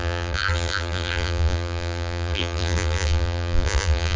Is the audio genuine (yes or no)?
no